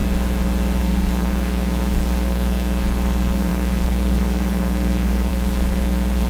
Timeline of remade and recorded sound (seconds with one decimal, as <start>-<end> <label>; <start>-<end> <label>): 0.0-0.8 recorded; 0.8-6.3 remade